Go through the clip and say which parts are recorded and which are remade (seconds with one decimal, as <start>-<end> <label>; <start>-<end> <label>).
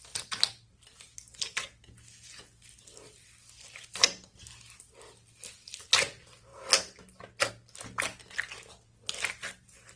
0.0-10.0 recorded